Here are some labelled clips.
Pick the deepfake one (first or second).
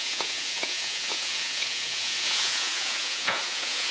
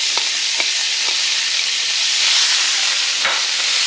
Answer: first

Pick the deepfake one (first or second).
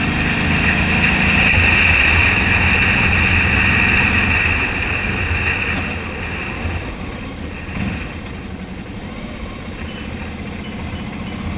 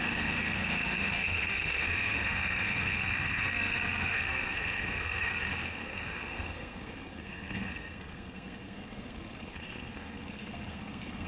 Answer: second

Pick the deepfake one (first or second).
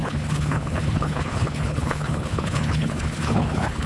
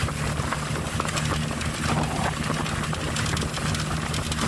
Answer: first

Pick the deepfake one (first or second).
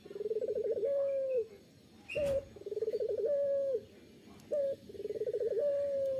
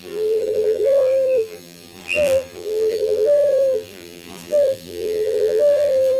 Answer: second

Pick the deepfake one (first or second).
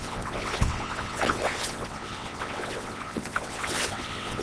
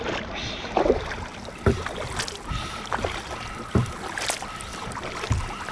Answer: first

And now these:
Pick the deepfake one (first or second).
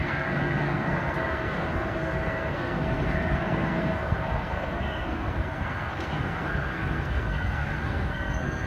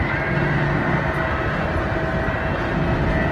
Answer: first